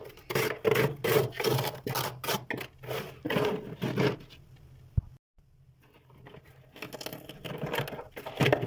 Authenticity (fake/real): real